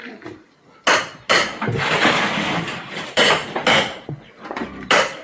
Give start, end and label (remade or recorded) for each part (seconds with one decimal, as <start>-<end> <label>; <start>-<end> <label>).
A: 0.0-1.3 recorded; 1.3-3.4 remade; 3.4-5.2 recorded